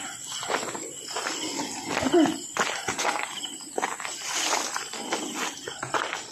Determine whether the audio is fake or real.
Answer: real